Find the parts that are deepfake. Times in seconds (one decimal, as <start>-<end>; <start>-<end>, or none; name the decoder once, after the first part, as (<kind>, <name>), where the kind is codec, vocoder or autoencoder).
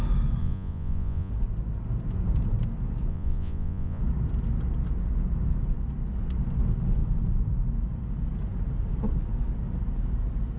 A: 0.4-1.3 (vocoder, Vocos); 3.1-4.0